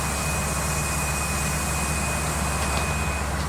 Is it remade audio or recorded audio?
recorded